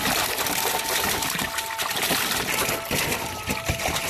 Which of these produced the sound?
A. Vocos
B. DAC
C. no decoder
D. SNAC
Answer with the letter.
C